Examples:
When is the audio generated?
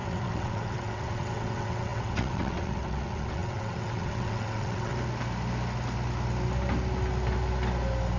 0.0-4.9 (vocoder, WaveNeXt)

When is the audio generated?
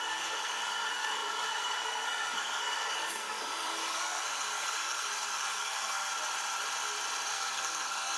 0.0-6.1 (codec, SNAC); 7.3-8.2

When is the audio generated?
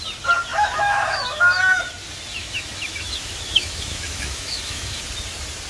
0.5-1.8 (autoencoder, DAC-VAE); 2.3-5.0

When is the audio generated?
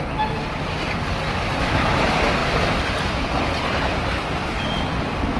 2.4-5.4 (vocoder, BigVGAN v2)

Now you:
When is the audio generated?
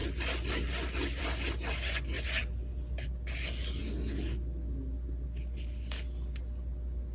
none